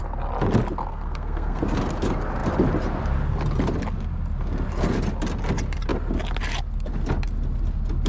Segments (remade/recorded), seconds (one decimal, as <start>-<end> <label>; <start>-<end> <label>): 0.0-0.9 recorded; 0.9-1.6 remade; 1.6-8.1 recorded